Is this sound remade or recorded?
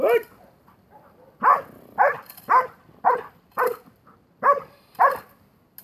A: recorded